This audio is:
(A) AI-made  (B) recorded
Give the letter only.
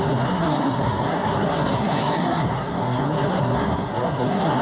A